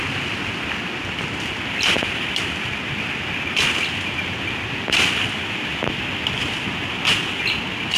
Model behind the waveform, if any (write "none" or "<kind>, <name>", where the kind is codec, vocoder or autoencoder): none